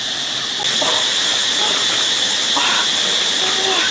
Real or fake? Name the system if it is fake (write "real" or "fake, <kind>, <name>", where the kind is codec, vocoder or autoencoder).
real